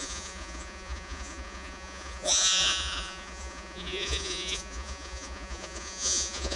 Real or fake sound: fake